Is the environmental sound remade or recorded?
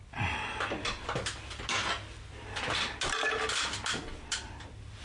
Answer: recorded